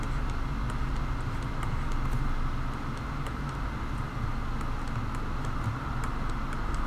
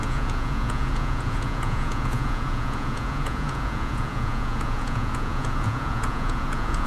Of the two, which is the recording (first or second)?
first